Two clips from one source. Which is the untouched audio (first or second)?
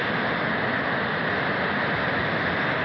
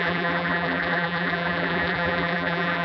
first